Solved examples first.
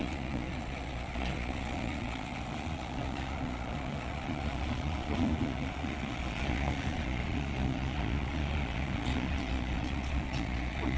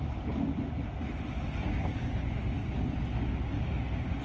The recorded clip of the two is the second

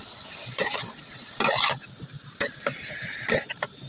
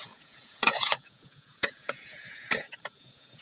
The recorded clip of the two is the first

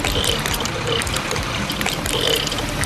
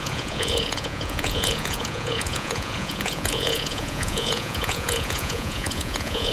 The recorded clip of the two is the first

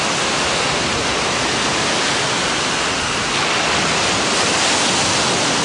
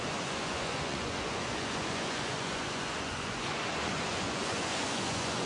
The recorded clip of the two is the first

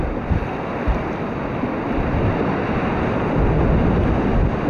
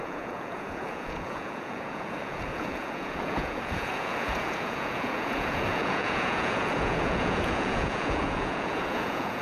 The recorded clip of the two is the first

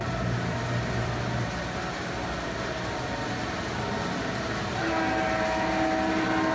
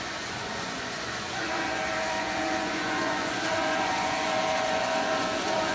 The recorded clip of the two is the first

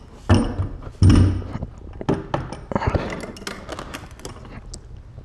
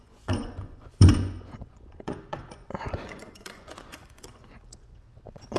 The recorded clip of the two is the first